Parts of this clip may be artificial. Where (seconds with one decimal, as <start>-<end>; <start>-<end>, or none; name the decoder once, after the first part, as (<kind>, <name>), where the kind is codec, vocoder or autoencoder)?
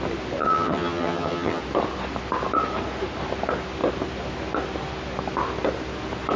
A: 0.4-1.6 (vocoder, HiFi-GAN)